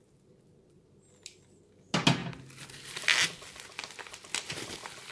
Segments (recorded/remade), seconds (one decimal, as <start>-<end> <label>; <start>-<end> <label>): 0.0-5.1 recorded